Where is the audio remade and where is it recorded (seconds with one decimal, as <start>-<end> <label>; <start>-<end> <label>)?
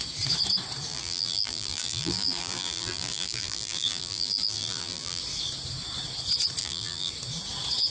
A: 0.0-0.9 recorded; 0.9-5.2 remade; 5.2-6.6 recorded; 6.6-7.1 remade; 7.1-7.9 recorded